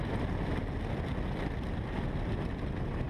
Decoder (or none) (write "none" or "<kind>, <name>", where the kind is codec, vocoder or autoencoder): none